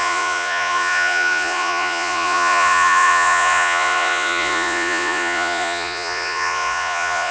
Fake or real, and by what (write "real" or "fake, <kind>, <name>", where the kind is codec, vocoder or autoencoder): fake, vocoder, Vocos